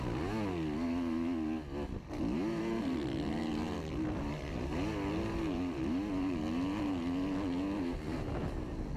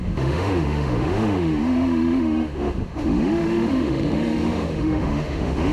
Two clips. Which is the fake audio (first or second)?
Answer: second